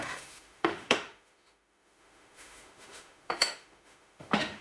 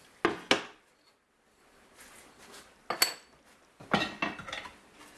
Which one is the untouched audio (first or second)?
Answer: second